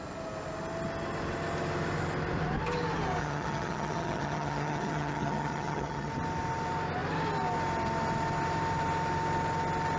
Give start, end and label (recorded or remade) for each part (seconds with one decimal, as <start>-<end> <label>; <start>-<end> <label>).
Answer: 0.0-3.2 recorded; 3.2-6.1 remade; 6.1-10.0 recorded

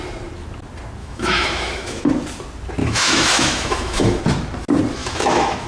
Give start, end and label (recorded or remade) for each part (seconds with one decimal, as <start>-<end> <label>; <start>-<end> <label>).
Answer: 0.0-1.0 recorded; 1.0-2.1 remade; 2.1-2.8 recorded; 2.8-4.2 remade; 4.2-5.0 recorded; 5.0-5.7 remade